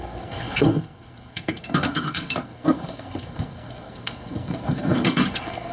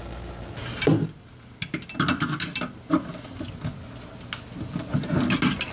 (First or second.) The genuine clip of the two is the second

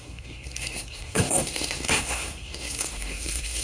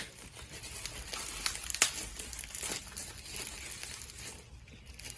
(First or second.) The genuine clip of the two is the second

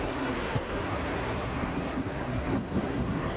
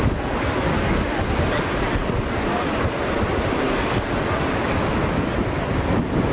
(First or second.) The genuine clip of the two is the second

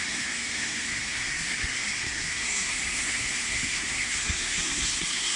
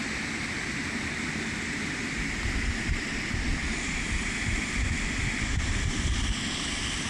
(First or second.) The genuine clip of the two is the second